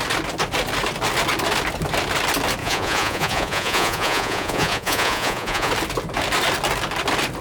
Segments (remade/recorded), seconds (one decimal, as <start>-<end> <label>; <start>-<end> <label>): 0.0-2.6 recorded; 2.6-5.7 remade; 5.7-7.4 recorded